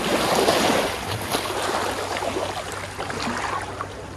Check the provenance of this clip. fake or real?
real